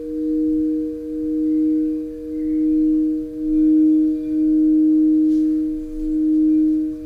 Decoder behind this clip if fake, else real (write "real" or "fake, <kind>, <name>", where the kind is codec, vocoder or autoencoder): real